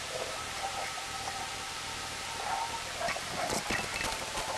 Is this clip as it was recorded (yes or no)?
no